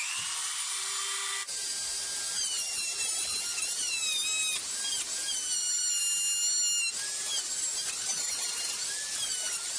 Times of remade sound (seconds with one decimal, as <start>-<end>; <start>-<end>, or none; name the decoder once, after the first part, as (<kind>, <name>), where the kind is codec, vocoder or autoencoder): 0.0-4.1 (vocoder, BigVGAN v2); 5.0-6.0; 8.6-9.8